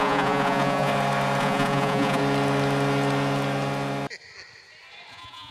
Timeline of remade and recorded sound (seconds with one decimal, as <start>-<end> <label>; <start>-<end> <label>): 0.0-0.9 remade; 0.9-1.4 recorded; 1.4-2.2 remade; 2.2-5.1 recorded; 5.1-5.5 remade